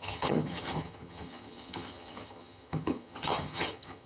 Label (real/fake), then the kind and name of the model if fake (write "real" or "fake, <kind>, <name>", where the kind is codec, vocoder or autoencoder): fake, vocoder, HiFi-GAN